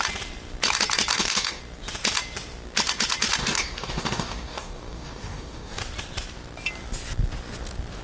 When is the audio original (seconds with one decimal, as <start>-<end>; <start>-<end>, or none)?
0.0-1.1; 1.6-3.4; 5.8-8.0